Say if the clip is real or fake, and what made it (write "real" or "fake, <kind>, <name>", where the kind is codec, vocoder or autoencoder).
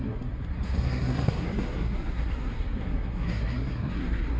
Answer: fake, codec, SNAC